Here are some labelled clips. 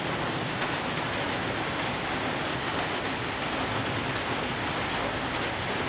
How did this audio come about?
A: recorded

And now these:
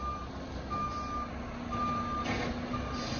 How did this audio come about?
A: recorded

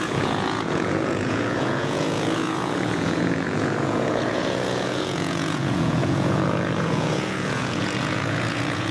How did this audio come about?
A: remade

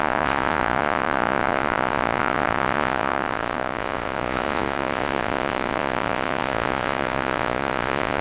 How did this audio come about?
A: remade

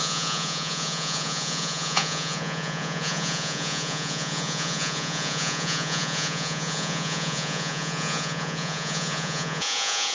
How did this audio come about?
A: remade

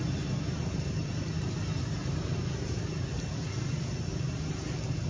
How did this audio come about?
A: recorded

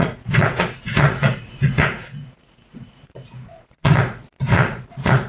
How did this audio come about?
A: remade